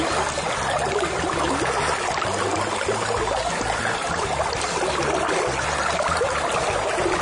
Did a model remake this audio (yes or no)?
no